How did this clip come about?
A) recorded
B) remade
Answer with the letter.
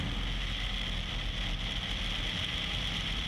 A